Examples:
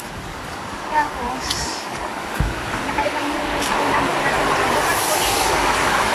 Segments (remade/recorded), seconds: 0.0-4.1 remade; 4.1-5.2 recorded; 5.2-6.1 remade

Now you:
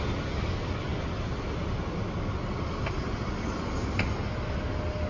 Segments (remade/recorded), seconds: 0.0-5.1 recorded

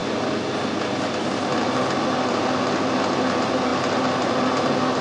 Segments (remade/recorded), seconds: 0.0-5.0 recorded

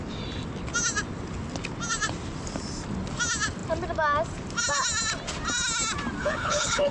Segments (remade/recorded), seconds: 0.0-6.2 recorded; 6.2-6.9 remade

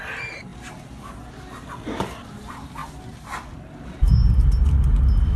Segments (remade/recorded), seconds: 0.0-5.4 recorded

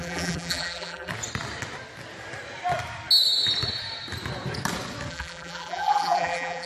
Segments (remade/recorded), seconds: 0.0-1.1 remade; 1.1-5.1 recorded; 5.1-6.7 remade

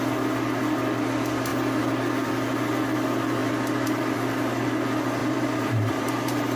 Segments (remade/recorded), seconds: 0.0-5.2 recorded; 5.2-6.6 remade

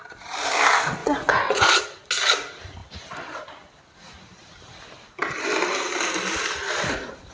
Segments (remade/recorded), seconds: 0.0-1.0 recorded; 1.0-1.8 remade; 1.8-7.3 recorded